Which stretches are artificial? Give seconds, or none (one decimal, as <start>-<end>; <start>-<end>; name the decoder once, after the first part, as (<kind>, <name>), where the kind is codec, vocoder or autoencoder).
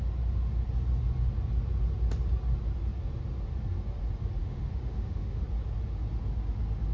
4.4-5.4 (autoencoder, DAC-VAE)